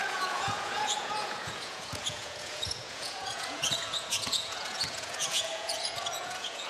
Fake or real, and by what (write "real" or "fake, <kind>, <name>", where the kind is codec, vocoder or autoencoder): fake, vocoder, Vocos